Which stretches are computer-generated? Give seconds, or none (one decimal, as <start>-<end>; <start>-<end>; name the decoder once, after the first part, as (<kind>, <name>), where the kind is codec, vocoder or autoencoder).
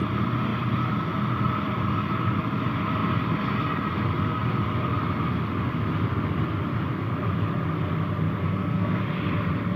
8.4-9.0 (codec, SNAC)